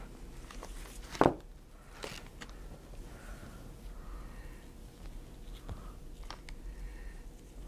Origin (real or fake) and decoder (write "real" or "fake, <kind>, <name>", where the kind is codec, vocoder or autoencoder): real